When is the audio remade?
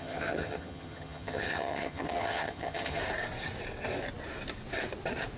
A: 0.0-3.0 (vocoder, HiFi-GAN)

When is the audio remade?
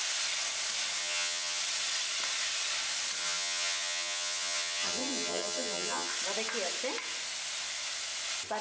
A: 1.0-1.6 (vocoder, HiFi-GAN); 3.2-6.1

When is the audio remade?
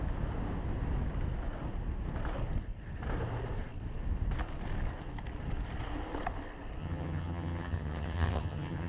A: 6.8-8.9 (vocoder, HiFi-GAN)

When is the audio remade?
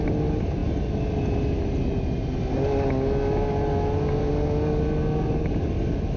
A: none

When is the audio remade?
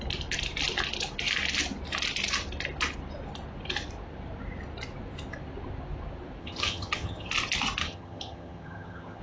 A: 6.4-7.3 (vocoder, HiFi-GAN); 7.8-9.2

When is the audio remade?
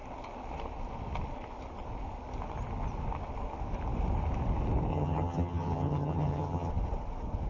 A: 4.9-6.7 (vocoder, HiFi-GAN)